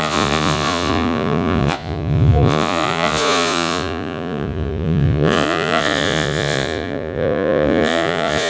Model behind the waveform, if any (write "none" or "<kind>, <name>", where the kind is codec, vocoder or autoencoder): vocoder, Vocos